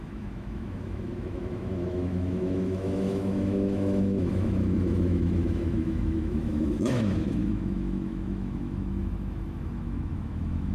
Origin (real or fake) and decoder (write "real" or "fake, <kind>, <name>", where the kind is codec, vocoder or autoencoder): fake, autoencoder, DAC-VAE